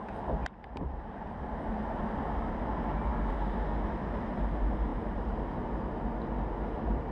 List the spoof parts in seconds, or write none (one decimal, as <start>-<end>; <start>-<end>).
0.4-2.0; 4.9-5.5